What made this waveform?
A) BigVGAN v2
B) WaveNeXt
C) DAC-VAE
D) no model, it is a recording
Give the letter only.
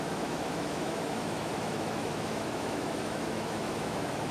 C